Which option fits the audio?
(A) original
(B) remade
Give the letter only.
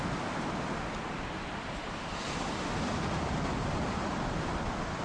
A